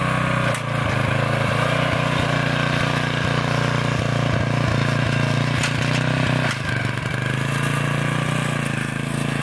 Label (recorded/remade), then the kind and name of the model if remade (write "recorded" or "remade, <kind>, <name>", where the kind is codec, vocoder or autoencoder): recorded